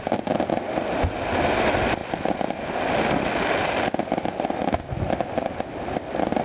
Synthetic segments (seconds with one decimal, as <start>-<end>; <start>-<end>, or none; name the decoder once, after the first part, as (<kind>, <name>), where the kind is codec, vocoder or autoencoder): none